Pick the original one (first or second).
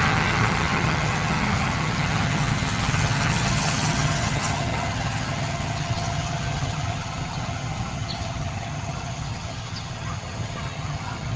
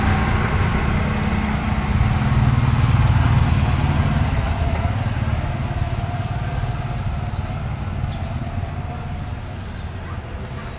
second